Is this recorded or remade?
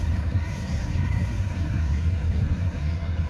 remade